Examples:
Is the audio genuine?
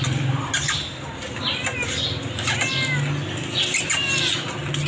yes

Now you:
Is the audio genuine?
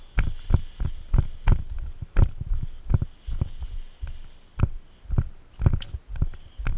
yes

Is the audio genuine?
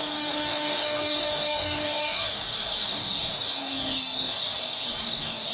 no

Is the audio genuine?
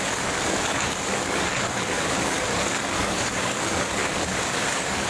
no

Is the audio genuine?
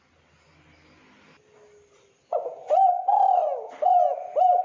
yes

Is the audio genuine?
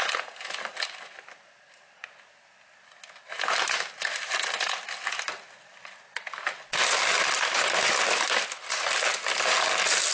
yes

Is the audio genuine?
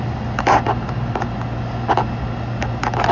yes